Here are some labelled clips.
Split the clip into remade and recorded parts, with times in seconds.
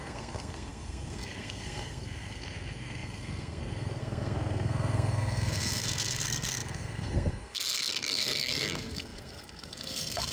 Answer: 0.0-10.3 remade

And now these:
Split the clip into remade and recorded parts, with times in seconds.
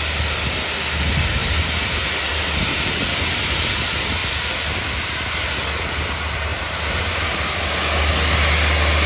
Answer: 0.0-1.4 recorded; 1.4-3.7 remade; 3.7-4.2 recorded; 4.2-5.3 remade; 5.3-6.5 recorded; 6.5-7.1 remade; 7.1-9.1 recorded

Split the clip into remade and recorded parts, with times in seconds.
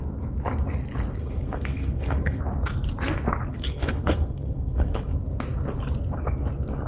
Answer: 0.0-1.2 recorded; 1.2-2.4 remade; 2.4-3.5 recorded; 3.5-5.1 remade; 5.1-6.9 recorded